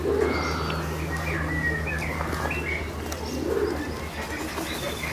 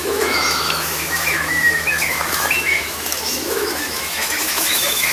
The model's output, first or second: second